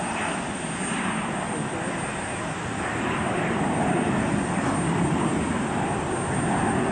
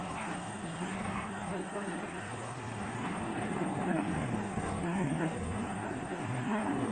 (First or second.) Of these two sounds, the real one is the first